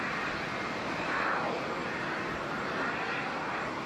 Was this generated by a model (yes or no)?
no